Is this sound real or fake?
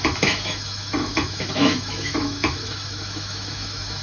fake